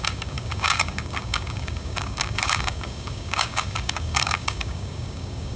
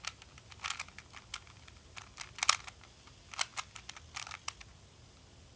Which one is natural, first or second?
second